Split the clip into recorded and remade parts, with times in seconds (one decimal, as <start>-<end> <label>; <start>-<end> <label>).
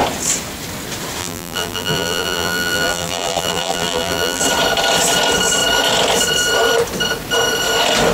0.0-1.2 recorded; 1.2-4.4 remade; 4.4-8.1 recorded